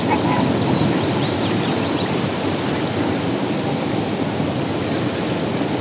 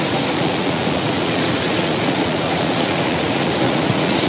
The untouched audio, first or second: first